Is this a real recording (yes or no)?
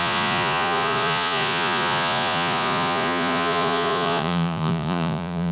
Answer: no